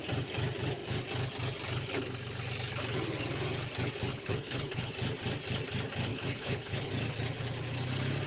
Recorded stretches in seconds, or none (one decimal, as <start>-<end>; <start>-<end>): 0.0-4.1; 4.9-6.1; 6.9-8.3